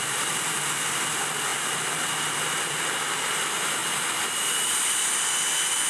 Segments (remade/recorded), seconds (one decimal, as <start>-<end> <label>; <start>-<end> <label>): 0.0-5.9 recorded